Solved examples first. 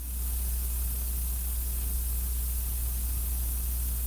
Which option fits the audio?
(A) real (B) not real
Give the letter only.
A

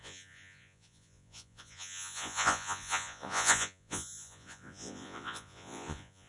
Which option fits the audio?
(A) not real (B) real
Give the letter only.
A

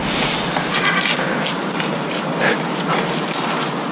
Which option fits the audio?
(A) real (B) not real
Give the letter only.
A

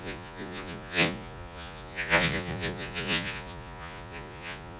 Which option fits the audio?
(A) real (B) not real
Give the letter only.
B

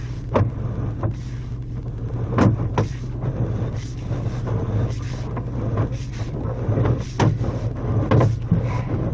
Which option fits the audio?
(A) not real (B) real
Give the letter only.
B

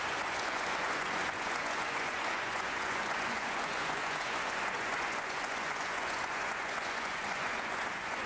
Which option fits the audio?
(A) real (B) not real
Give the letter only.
B